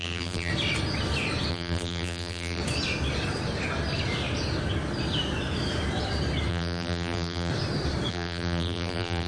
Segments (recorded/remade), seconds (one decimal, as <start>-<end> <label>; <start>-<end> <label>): 0.0-0.5 remade; 0.5-1.5 recorded; 1.5-2.6 remade; 2.6-6.5 recorded; 6.5-7.5 remade; 7.5-8.1 recorded; 8.1-9.3 remade